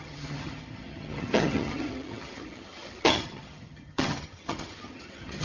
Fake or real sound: fake